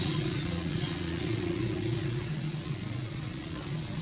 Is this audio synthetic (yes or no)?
yes